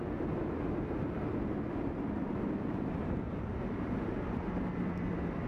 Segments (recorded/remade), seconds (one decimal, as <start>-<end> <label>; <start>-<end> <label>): 0.0-3.0 recorded; 3.0-4.2 remade; 4.2-5.5 recorded